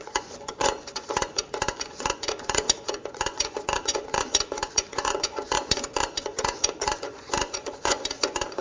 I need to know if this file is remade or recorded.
remade